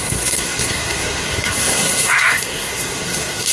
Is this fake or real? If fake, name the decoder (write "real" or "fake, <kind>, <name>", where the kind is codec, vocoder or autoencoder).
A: fake, codec, SNAC